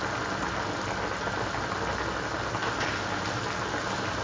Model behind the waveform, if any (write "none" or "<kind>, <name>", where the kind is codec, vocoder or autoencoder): none